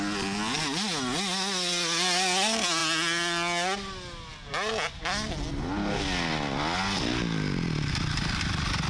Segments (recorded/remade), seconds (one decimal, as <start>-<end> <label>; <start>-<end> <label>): 0.0-8.9 recorded